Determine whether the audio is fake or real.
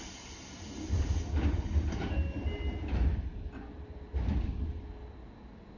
real